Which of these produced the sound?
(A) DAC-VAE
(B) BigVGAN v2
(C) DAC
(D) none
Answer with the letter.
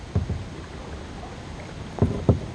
D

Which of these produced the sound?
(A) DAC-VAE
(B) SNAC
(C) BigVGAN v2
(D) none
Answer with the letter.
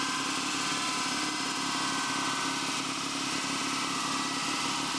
D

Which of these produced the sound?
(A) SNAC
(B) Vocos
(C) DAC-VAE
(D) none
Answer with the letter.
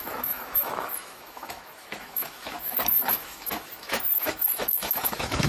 C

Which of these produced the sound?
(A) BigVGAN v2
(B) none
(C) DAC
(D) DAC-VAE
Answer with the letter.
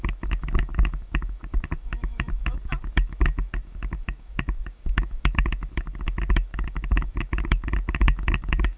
D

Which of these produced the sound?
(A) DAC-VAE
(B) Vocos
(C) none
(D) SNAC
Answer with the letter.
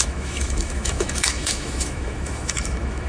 A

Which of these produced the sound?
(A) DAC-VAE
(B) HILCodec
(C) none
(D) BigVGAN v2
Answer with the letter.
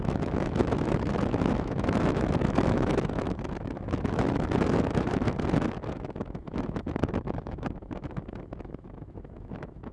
A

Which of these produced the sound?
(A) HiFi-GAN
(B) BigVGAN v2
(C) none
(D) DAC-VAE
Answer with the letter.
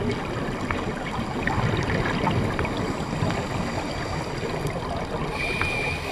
C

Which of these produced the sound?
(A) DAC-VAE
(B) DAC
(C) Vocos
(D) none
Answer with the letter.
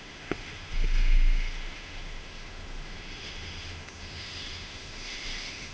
A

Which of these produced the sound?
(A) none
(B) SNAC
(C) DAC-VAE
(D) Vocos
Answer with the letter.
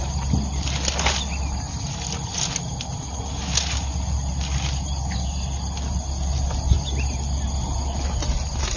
A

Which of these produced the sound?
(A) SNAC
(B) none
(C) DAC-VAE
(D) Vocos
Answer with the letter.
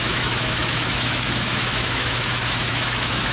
C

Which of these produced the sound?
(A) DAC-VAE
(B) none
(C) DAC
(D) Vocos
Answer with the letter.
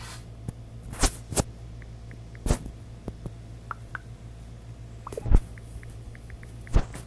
B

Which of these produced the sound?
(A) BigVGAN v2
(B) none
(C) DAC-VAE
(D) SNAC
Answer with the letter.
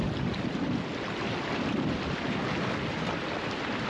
B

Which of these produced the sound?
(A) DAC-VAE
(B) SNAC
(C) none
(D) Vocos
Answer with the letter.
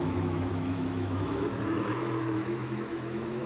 A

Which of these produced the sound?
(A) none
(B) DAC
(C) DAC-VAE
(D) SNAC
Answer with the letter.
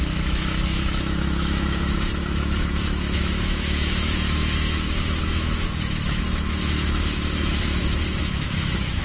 C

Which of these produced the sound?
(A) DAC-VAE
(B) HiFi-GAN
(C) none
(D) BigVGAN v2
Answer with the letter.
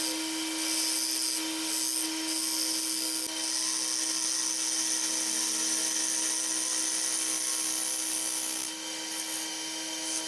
C